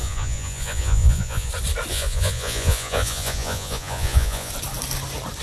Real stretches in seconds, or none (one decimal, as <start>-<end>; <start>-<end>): 1.5-1.9; 4.5-5.4